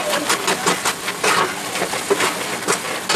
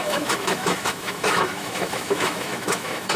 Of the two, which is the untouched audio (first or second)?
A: first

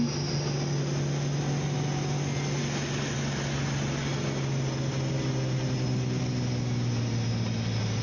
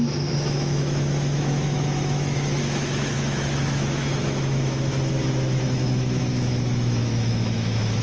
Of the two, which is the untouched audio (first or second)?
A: first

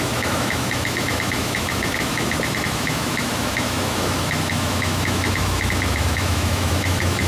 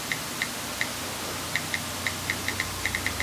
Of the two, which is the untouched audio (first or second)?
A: second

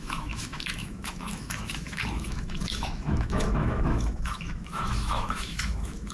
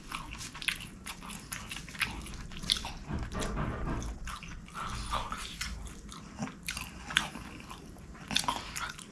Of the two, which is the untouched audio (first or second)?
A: second